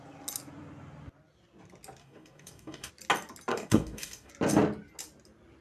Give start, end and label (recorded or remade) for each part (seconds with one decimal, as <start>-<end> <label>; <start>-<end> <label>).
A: 0.0-2.0 recorded; 2.0-2.9 remade; 2.9-3.5 recorded; 3.5-4.3 remade; 4.3-5.6 recorded